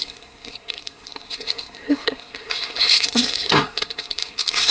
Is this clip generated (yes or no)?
yes